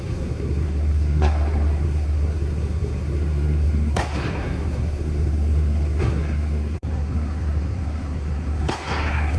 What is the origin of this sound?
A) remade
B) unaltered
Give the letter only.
A